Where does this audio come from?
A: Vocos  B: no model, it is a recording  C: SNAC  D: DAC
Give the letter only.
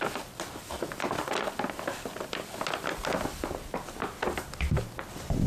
B